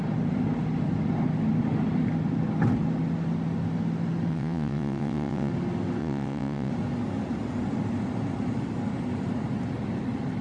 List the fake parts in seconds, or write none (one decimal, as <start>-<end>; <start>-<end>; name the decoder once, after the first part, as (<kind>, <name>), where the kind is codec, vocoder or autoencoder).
4.3-5.5 (vocoder, WaveNeXt); 6.0-6.7